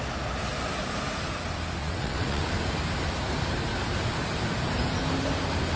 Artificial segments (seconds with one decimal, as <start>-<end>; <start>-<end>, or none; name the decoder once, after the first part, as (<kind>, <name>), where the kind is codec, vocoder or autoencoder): 1.8-2.5 (vocoder, WaveNeXt)